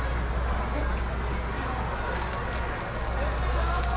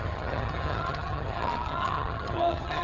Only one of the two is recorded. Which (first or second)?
first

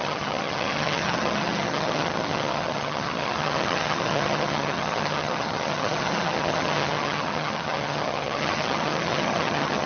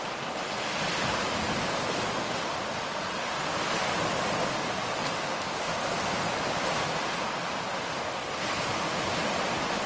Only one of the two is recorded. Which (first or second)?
second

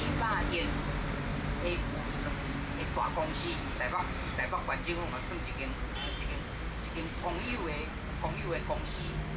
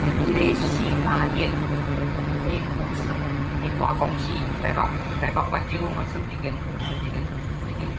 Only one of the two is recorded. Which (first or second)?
first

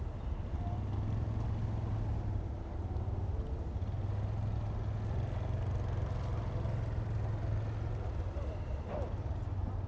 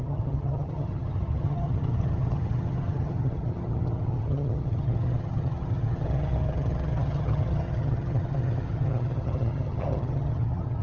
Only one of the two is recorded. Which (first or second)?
first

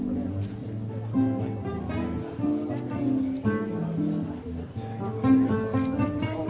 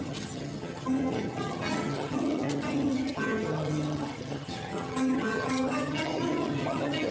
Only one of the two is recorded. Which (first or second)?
first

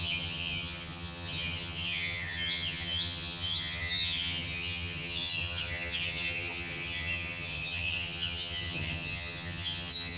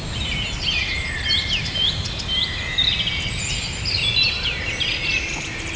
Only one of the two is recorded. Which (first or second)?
second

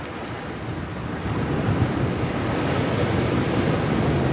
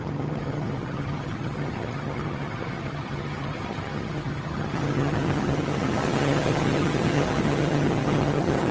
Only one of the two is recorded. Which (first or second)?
first